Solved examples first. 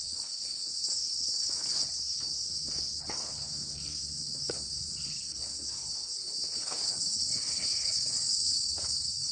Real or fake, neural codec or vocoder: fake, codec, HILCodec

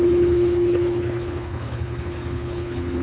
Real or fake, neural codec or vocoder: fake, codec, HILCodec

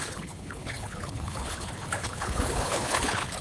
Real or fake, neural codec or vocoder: fake, codec, HILCodec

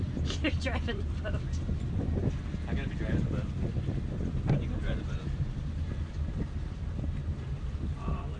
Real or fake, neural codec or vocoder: real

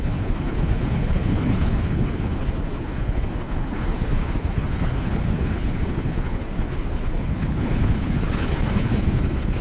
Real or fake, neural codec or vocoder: fake, codec, HILCodec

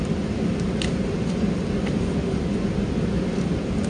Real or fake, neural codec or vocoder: real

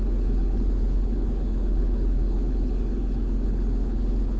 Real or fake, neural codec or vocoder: fake, codec, HILCodec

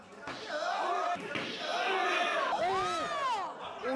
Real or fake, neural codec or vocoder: real